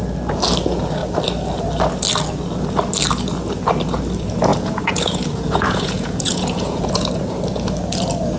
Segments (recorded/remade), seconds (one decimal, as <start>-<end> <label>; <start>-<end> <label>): 0.0-4.5 recorded; 4.5-7.1 remade; 7.1-8.4 recorded